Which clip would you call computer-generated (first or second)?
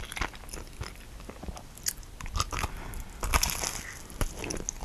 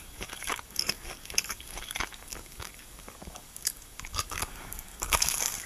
second